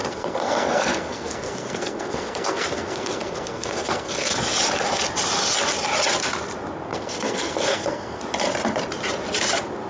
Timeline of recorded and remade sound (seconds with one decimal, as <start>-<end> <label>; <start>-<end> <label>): 0.0-4.4 remade; 4.4-6.9 recorded; 6.9-8.2 remade; 8.2-9.9 recorded